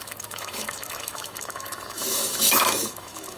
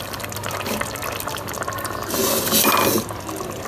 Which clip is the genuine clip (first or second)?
second